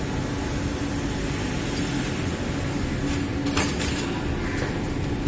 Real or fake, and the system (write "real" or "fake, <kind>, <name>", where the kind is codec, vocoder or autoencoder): real